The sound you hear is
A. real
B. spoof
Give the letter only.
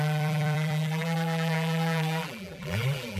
B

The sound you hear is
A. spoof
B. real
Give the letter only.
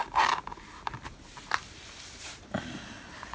B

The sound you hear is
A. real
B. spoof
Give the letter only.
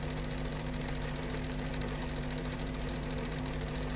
B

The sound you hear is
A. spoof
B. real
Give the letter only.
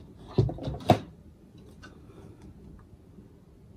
B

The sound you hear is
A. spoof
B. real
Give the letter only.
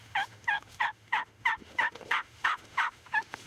A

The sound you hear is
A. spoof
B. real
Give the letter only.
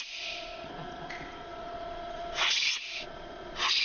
A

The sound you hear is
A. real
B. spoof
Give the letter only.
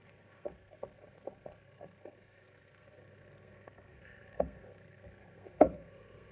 B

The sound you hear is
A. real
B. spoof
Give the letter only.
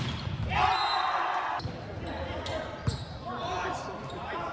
A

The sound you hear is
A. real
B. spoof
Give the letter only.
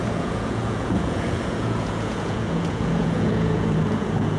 B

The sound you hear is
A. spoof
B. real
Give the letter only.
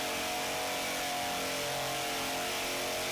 B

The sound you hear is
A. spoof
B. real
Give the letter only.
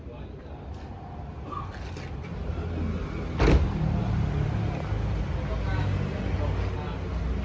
B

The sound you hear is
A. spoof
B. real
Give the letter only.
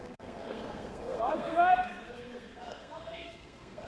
A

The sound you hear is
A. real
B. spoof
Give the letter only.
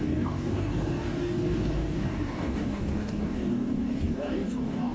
B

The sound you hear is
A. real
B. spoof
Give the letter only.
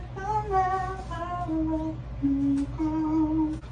A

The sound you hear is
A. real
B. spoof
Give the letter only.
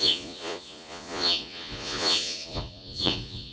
B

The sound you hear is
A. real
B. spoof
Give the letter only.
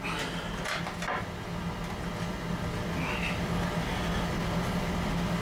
A